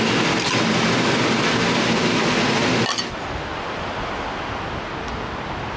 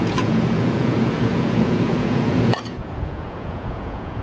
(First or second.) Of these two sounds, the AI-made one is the second